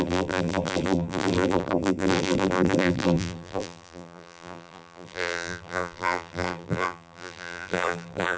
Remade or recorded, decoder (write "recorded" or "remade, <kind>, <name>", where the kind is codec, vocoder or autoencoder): remade, vocoder, BigVGAN v2